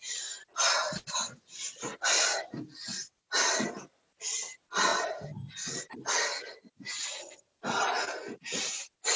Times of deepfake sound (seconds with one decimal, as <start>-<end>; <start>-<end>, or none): none